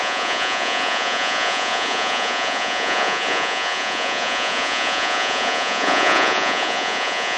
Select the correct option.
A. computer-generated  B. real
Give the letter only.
A